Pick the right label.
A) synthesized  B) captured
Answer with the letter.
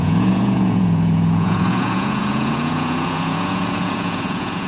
A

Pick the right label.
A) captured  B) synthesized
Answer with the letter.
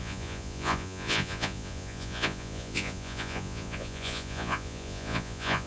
B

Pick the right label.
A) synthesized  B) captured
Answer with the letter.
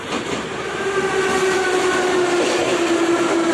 B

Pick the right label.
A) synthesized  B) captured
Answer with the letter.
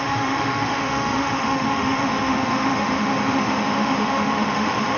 A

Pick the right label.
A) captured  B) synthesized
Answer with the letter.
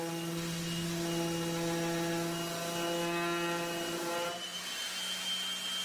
A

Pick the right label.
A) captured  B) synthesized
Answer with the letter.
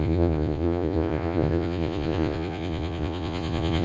B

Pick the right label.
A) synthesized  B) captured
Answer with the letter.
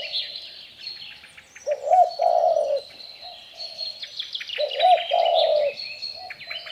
B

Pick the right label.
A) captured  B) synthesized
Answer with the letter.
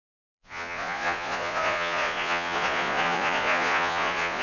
B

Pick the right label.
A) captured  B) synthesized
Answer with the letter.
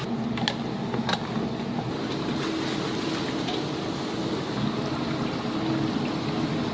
A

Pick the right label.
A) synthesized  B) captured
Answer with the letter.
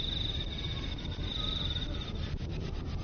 B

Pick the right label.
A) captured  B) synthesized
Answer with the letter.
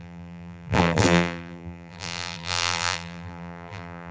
B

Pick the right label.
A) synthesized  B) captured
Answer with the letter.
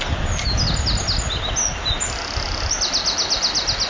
B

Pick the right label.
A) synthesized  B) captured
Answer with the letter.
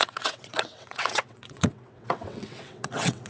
A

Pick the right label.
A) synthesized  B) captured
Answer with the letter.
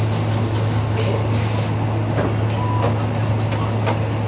B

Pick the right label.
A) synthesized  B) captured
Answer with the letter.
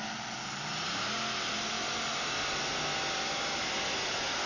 B